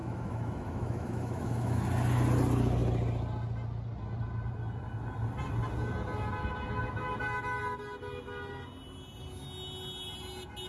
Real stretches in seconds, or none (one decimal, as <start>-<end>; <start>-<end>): 1.8-10.7